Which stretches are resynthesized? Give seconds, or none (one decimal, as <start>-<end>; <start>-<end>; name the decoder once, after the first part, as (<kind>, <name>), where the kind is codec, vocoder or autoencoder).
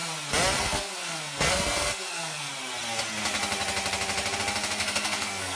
0.6-2.5 (codec, SNAC); 4.7-5.6